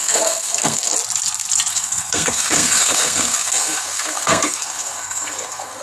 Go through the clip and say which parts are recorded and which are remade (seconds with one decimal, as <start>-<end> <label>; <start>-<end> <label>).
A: 0.0-0.9 remade; 0.9-1.7 recorded; 1.7-5.8 remade